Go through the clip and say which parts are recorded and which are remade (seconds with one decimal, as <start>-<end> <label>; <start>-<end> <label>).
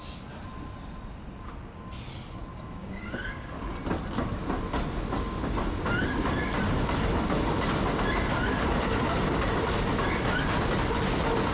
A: 0.0-2.8 recorded; 2.8-3.7 remade; 3.7-11.5 recorded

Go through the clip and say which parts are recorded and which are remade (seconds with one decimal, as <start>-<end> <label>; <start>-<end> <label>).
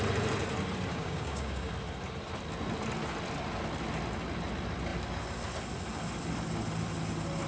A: 0.0-0.9 recorded; 0.9-1.7 remade; 1.7-7.5 recorded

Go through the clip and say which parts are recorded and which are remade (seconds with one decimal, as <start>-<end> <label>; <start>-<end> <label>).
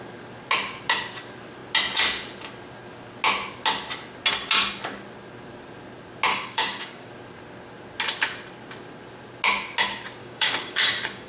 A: 0.0-6.3 recorded; 6.3-7.1 remade; 7.1-10.2 recorded; 10.2-11.3 remade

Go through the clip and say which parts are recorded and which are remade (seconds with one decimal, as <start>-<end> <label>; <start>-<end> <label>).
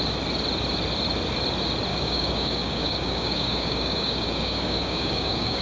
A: 0.0-1.9 recorded; 1.9-5.6 remade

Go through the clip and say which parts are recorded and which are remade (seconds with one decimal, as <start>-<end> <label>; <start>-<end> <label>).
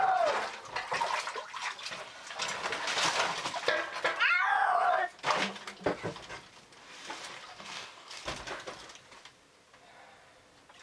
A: 0.0-7.5 recorded; 7.5-8.2 remade; 8.2-10.8 recorded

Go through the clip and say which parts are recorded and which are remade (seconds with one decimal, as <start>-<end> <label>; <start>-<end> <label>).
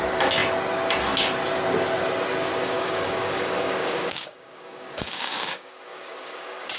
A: 0.0-2.6 recorded; 2.6-6.8 remade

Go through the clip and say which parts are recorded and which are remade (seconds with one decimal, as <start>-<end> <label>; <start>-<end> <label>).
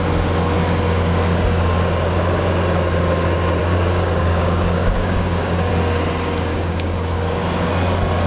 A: 0.0-3.6 recorded; 3.6-5.7 remade; 5.7-6.5 recorded; 6.5-7.2 remade; 7.2-8.3 recorded